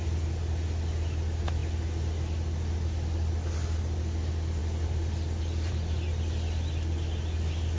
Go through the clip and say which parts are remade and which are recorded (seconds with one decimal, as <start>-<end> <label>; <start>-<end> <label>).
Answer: 0.0-7.8 recorded